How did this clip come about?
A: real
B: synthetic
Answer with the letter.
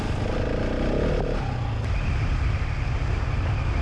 A